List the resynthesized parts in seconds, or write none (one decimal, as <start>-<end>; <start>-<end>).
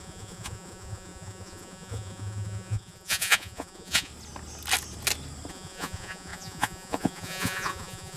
0.0-4.1; 5.5-8.2